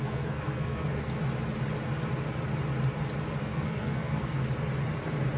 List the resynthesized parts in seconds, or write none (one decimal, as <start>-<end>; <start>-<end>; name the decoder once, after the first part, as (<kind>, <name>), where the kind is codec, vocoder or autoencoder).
0.0-1.2 (codec, SNAC); 3.4-4.4